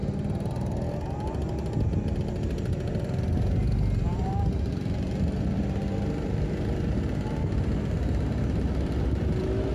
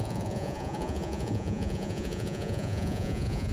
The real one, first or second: first